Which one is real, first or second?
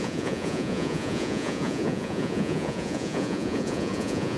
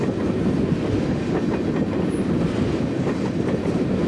second